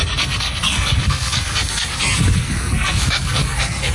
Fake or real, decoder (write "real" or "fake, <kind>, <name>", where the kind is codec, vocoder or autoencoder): fake, codec, SNAC